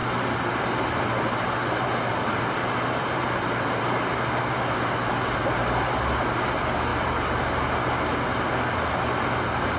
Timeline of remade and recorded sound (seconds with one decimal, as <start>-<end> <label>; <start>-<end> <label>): 0.0-4.1 remade; 4.1-6.9 recorded; 6.9-7.7 remade; 7.7-9.8 recorded